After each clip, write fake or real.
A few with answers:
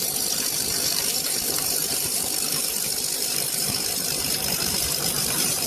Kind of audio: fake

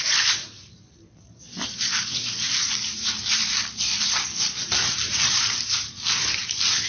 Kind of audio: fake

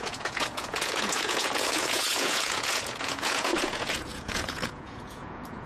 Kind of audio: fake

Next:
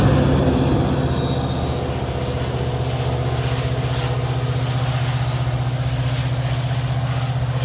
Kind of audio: real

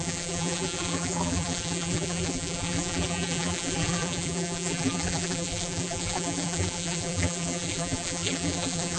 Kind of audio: fake